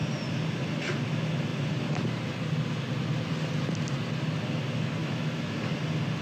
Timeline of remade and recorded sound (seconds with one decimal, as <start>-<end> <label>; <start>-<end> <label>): 0.0-5.0 recorded; 5.0-5.6 remade; 5.6-6.2 recorded